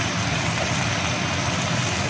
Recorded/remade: recorded